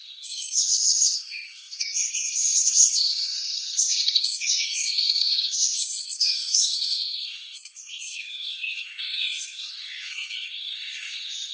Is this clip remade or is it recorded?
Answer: remade